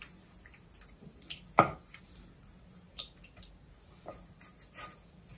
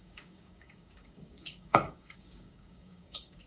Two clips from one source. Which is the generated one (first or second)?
second